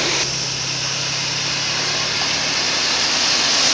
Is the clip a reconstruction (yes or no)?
no